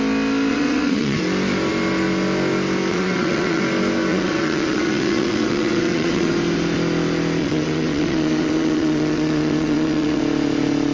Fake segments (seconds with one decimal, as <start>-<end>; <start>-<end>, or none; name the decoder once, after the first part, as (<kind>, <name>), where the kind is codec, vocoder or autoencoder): 0.5-1.2 (vocoder, WaveNeXt); 2.9-3.6; 4.1-6.3; 7.4-10.2